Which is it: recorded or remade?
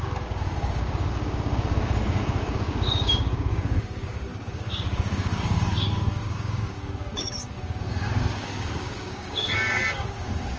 remade